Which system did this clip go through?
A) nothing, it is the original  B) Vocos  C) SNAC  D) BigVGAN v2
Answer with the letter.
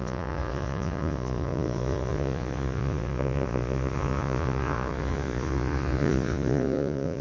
B